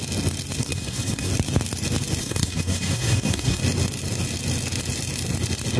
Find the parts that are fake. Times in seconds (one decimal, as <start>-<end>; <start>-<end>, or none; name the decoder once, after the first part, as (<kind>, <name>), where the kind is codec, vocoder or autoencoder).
0.6-1.3 (codec, SNAC); 2.2-3.6